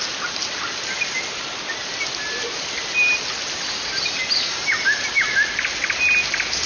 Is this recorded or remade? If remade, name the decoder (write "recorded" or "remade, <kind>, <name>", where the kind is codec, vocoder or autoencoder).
recorded